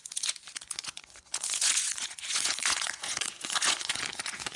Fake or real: fake